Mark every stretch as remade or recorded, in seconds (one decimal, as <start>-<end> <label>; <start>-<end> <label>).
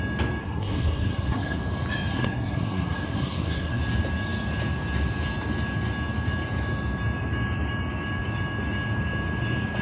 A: 0.0-0.4 recorded; 0.4-1.6 remade; 1.6-2.1 recorded; 2.1-3.8 remade; 3.8-9.8 recorded